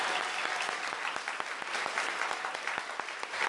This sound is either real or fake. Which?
fake